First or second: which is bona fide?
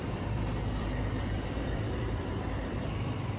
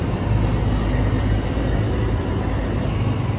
second